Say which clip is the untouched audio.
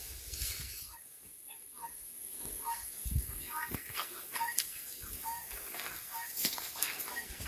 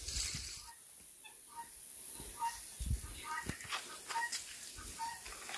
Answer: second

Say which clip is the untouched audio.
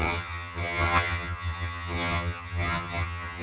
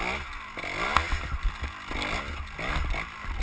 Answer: second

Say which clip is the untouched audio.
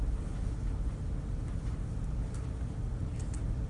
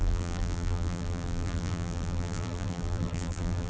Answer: first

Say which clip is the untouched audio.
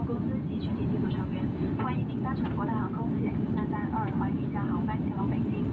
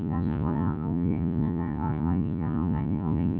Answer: first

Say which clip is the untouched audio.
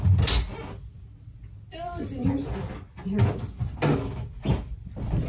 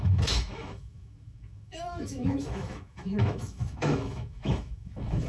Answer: first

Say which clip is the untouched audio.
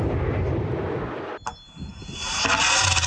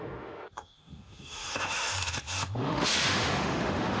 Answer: first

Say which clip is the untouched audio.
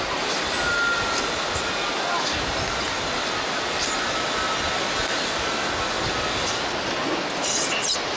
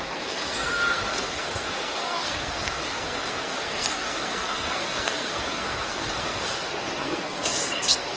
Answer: first